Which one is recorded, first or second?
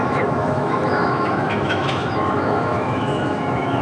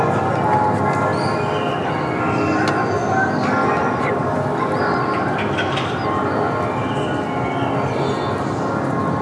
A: second